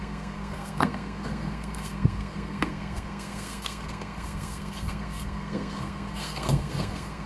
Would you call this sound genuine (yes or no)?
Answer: no